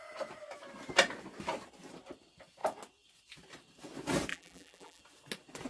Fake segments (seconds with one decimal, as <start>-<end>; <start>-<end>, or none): 4.3-5.0